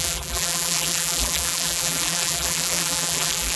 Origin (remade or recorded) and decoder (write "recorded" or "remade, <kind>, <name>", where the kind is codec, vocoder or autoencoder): remade, vocoder, BigVGAN v2